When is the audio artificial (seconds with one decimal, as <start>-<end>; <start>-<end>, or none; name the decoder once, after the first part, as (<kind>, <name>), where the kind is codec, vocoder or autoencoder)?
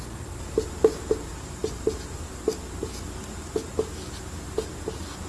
none